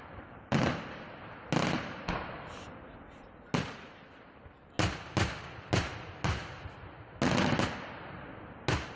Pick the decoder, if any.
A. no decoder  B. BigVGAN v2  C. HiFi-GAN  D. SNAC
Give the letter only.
A